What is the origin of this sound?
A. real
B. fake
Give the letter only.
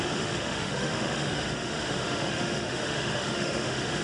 B